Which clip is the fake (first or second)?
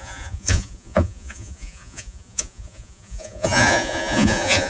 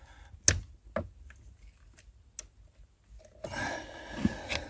first